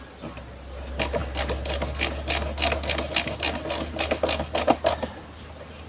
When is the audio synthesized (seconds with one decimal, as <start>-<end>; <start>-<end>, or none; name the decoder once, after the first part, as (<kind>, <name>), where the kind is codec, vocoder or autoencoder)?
none